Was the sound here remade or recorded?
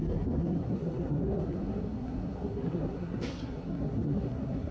remade